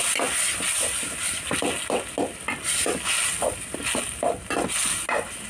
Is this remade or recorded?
recorded